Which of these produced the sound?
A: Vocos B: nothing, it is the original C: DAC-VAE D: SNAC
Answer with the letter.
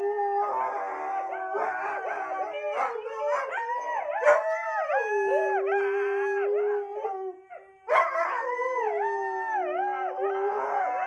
B